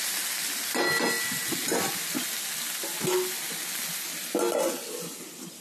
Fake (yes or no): no